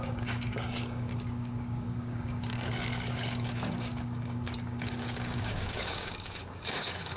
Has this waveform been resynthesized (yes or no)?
yes